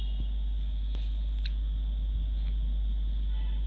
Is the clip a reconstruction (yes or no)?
no